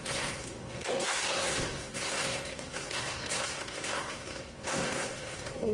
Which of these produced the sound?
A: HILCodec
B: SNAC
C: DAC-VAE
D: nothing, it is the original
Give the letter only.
B